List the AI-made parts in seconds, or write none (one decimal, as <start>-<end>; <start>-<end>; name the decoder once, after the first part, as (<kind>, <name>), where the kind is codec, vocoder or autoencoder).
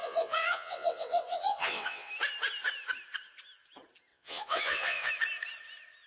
0.0-2.1 (vocoder, WaveNeXt); 4.1-5.1